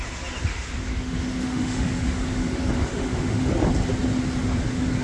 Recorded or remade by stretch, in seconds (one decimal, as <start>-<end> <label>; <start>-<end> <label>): 0.0-0.5 recorded; 0.5-3.5 remade; 3.5-5.0 recorded